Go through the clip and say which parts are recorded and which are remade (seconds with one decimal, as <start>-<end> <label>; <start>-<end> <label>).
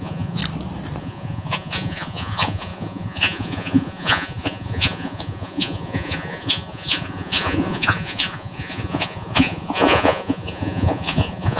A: 0.0-0.4 remade; 0.4-1.0 recorded; 1.0-11.6 remade